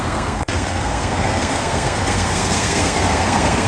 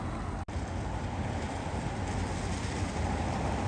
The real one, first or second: second